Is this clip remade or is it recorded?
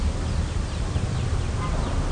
recorded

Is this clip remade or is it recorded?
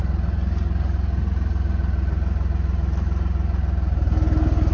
recorded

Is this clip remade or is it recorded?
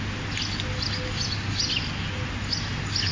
recorded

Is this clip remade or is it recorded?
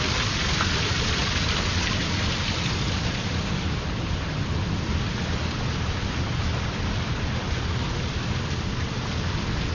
recorded